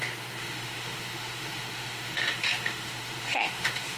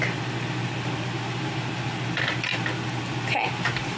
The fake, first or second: first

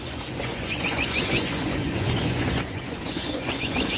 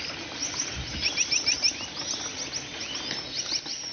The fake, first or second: first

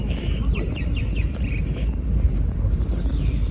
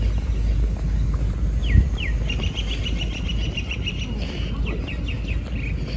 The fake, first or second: first